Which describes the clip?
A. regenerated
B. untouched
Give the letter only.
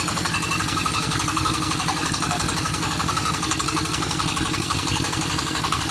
A